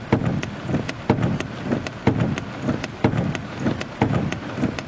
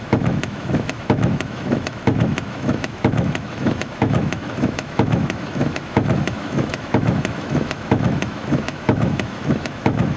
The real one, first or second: first